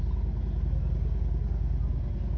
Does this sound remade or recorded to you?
recorded